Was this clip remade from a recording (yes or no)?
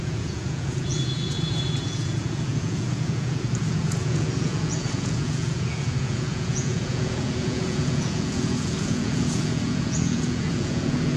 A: yes